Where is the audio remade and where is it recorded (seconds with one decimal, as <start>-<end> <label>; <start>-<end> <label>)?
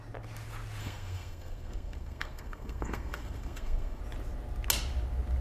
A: 0.0-0.8 recorded; 0.8-4.0 remade; 4.0-5.4 recorded